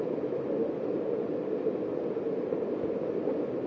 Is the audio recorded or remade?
recorded